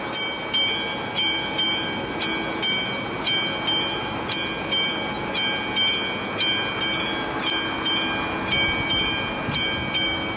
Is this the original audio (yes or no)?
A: yes